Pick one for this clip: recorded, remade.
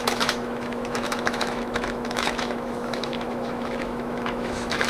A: remade